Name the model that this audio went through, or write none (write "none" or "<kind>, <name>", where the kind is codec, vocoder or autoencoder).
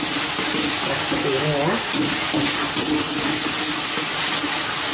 none